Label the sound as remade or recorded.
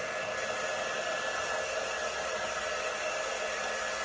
recorded